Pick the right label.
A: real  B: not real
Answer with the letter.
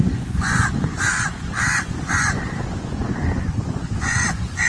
B